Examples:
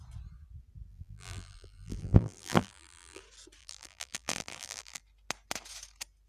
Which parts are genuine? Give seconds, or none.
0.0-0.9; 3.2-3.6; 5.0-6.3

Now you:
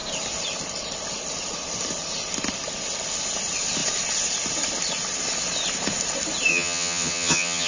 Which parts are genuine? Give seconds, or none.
0.0-6.5